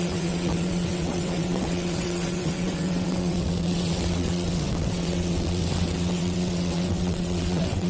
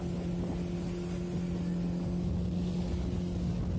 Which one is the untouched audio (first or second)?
second